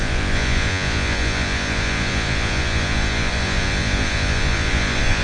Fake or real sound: fake